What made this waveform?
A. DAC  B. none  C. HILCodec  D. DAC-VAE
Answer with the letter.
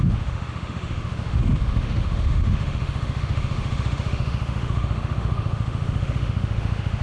D